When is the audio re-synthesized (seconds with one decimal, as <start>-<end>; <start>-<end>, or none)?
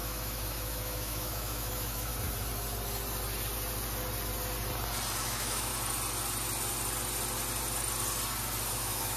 0.0-2.1; 5.2-5.7; 8.7-9.2